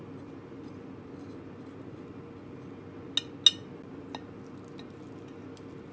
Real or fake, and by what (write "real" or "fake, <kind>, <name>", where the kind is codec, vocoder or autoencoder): real